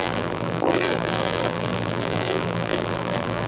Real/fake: fake